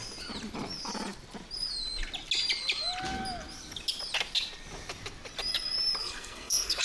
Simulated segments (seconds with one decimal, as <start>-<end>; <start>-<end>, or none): 6.0-6.8